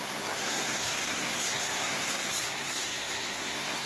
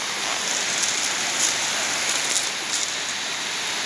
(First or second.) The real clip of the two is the second